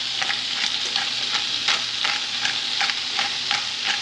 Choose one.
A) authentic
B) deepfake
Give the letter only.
B